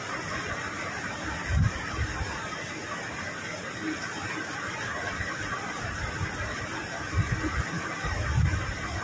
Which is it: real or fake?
real